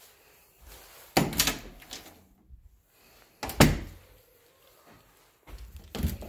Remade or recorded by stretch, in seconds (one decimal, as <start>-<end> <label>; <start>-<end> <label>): 0.0-6.3 recorded